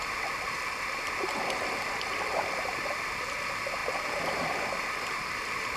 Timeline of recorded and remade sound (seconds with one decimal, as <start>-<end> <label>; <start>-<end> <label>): 0.0-5.8 recorded